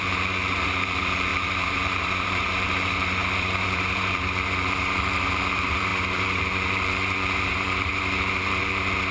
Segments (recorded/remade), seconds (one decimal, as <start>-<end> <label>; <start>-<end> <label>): 0.0-9.1 remade